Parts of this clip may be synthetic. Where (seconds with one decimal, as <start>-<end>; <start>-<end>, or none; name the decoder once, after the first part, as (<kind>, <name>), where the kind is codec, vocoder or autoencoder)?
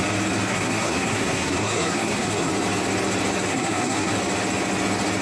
0.5-2.5 (codec, SNAC); 3.5-4.1